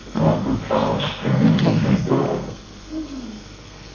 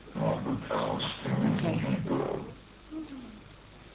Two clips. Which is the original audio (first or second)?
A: second